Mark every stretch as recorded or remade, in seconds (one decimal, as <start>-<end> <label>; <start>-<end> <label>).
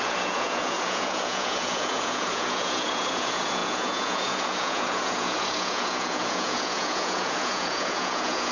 0.0-8.5 remade